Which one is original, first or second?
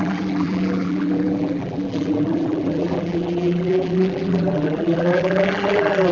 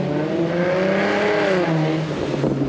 second